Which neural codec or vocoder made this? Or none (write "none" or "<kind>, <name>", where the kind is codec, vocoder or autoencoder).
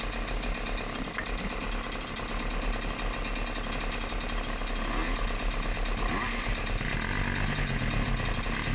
none